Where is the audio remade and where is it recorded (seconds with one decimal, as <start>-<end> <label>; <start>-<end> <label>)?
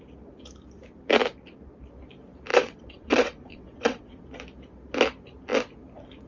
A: 0.0-2.5 recorded; 2.5-4.2 remade; 4.2-6.3 recorded